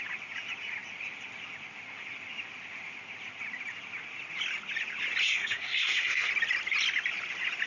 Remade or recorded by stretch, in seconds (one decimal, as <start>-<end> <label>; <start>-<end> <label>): 0.0-5.2 recorded; 5.2-6.3 remade; 6.3-7.7 recorded